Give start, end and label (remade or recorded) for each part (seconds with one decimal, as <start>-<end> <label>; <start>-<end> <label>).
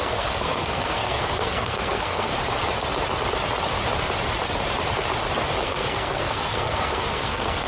0.0-2.3 remade; 2.3-5.6 recorded; 5.6-7.7 remade